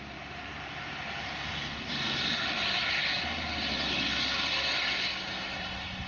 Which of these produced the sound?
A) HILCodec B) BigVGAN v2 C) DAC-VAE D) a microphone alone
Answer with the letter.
D